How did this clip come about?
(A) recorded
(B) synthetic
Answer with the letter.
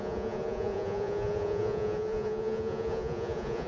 B